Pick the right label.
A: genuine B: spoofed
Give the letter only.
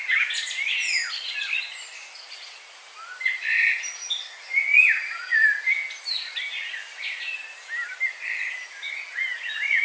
A